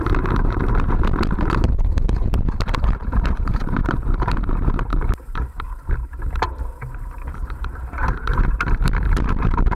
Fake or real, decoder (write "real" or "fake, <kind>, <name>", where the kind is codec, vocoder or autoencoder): fake, vocoder, BigVGAN v2